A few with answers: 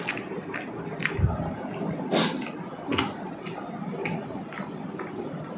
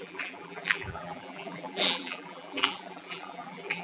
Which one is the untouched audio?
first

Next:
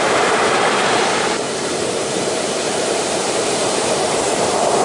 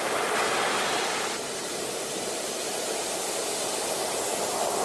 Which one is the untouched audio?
second